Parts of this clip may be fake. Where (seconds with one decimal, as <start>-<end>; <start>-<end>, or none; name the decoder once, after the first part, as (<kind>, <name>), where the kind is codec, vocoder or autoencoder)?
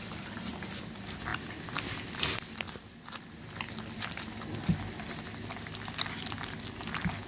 none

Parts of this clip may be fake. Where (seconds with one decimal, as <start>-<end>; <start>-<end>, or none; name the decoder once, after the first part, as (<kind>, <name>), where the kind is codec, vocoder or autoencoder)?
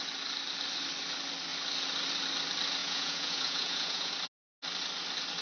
2.8-4.1 (vocoder, Vocos)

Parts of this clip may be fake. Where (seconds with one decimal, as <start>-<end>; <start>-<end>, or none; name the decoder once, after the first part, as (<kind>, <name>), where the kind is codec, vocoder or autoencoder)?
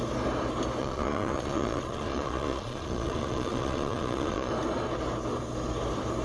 0.8-4.5 (vocoder, Vocos)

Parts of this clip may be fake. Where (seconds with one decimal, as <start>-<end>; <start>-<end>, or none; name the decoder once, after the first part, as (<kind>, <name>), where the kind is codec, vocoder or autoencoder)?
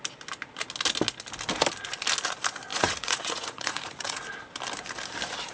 2.7-4.2 (vocoder, Vocos)